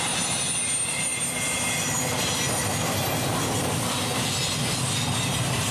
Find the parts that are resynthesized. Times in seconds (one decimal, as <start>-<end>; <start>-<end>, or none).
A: none